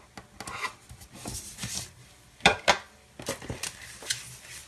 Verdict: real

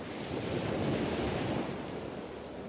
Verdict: real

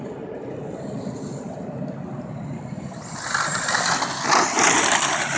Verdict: real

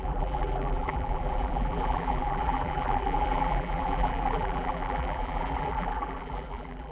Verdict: fake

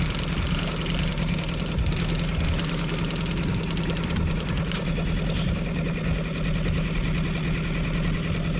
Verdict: real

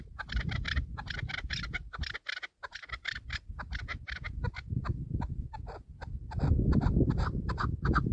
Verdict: real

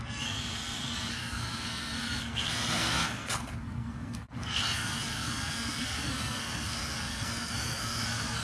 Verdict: fake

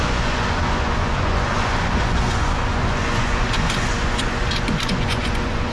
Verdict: fake